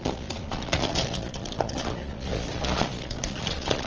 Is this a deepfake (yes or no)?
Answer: yes